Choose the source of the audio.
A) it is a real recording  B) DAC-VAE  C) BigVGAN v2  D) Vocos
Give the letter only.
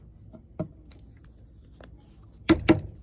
C